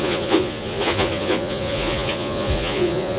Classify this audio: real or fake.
fake